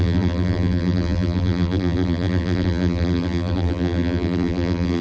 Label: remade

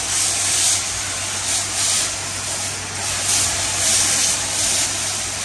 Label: recorded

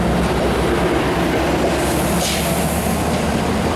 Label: recorded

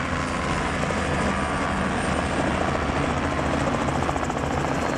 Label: recorded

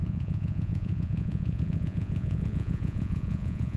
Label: remade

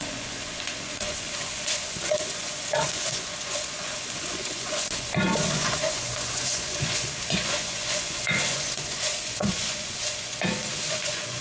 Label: remade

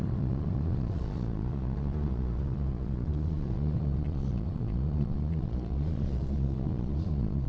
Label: remade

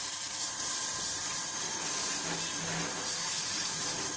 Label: recorded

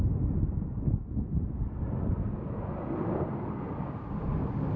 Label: recorded